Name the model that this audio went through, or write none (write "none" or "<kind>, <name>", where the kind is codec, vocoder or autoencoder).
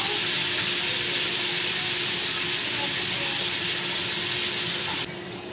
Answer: none